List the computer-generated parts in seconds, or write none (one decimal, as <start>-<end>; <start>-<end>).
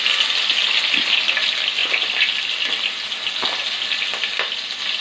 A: none